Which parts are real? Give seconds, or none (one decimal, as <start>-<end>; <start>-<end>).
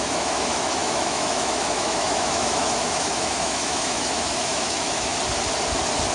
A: 5.1-6.1